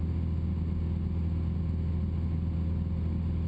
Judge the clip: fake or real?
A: real